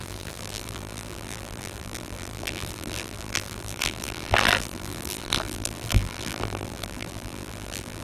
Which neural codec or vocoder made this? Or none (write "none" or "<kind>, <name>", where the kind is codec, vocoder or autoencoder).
vocoder, BigVGAN v2